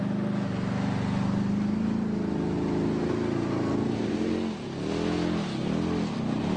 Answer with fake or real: real